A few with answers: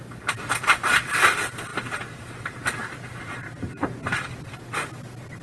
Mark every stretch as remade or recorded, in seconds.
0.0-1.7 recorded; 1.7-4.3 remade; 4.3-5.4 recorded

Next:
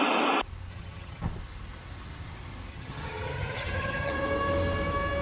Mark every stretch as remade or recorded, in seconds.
0.0-0.7 recorded; 0.7-1.2 remade; 1.2-2.7 recorded; 2.7-4.1 remade; 4.1-5.2 recorded

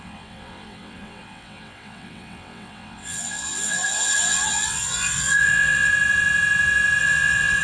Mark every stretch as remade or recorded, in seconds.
0.0-5.9 remade; 5.9-7.0 recorded; 7.0-7.6 remade